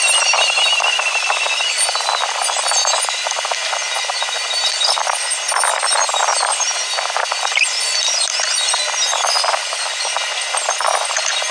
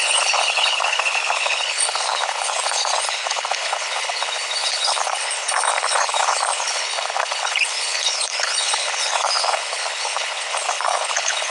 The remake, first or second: second